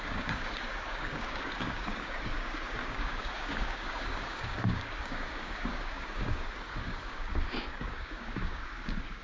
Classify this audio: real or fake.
fake